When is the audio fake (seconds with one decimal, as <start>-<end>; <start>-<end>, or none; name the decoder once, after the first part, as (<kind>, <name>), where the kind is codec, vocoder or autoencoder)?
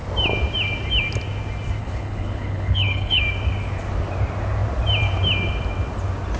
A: 1.8-3.2 (codec, HILCodec)